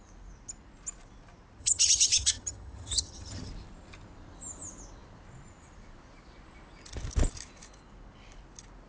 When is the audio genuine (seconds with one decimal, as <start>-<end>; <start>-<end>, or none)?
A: 0.0-1.6; 3.5-8.9